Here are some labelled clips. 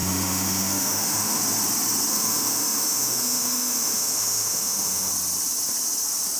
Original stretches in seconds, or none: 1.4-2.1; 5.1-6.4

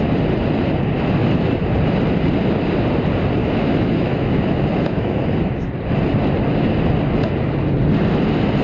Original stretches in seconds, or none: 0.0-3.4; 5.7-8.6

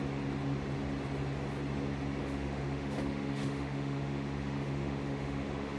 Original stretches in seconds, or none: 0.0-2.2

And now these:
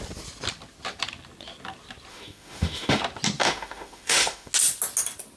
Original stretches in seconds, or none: 0.0-2.1; 3.0-3.4; 4.5-5.4

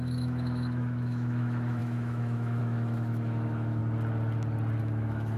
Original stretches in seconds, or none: 3.8-4.8

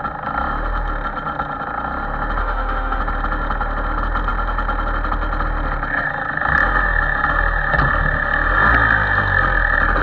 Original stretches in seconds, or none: 0.0-2.4; 3.0-10.0